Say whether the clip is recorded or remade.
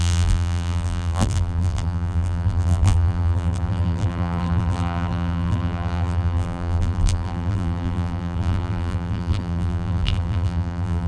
remade